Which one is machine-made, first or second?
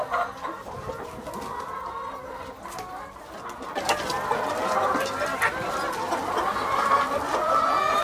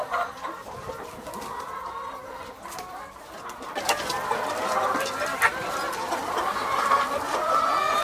second